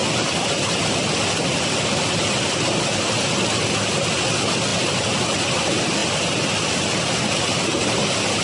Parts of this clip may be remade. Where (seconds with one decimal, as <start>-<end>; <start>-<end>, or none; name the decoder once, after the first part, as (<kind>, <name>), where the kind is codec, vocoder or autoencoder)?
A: none